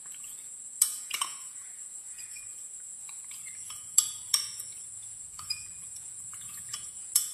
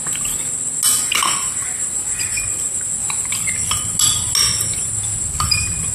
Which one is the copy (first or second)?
first